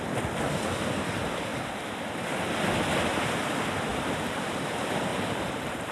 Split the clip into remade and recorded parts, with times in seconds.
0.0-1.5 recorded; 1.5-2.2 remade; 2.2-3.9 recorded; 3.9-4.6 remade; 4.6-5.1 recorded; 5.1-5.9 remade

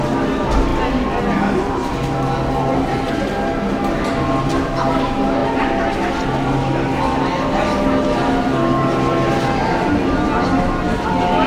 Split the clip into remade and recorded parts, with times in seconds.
0.0-11.5 recorded

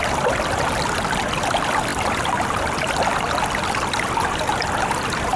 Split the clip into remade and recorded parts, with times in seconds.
0.0-1.9 recorded; 1.9-5.4 remade

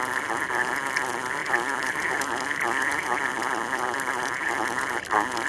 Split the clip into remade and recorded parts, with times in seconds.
0.0-1.4 recorded; 1.4-1.9 remade; 1.9-5.5 recorded

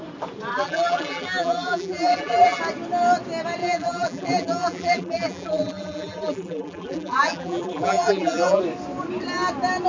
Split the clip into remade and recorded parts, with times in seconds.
0.0-0.5 recorded; 0.5-2.6 remade; 2.6-3.6 recorded; 3.6-8.6 remade; 8.6-9.9 recorded

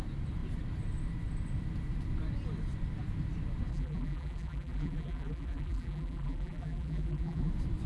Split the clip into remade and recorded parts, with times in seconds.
0.0-3.7 recorded; 3.7-7.5 remade; 7.5-7.9 recorded

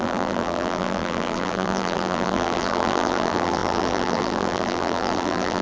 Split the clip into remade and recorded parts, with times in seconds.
0.0-5.6 remade